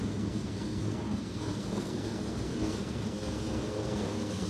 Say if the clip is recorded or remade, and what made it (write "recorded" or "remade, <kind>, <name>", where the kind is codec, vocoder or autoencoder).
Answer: remade, codec, SNAC